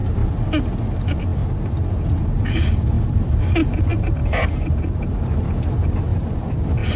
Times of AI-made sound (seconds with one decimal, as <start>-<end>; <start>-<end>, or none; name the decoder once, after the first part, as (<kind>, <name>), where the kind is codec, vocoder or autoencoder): 0.7-1.4 (vocoder, BigVGAN v2); 2.1-3.9; 5.8-7.0